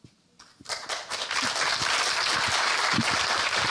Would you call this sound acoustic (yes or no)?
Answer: yes